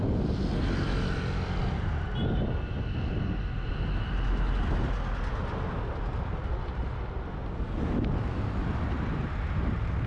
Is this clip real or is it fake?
real